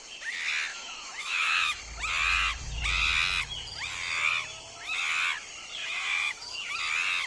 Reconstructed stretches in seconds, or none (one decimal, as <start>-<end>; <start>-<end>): 0.7-1.8; 5.8-6.7